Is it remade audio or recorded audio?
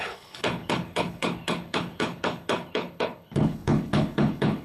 remade